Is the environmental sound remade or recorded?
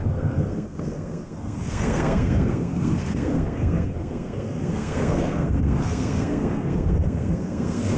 remade